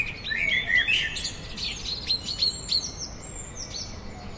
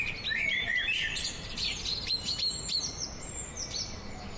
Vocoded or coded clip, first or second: second